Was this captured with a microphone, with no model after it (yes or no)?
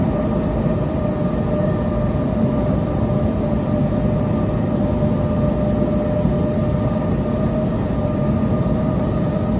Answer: yes